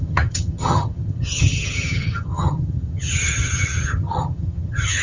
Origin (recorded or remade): remade